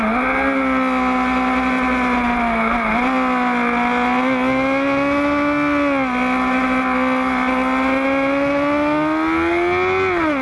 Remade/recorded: recorded